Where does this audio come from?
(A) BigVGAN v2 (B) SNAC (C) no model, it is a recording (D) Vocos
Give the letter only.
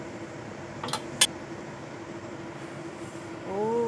C